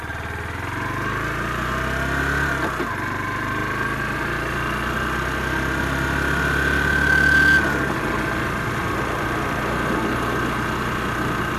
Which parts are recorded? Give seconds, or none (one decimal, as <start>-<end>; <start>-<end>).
0.0-11.6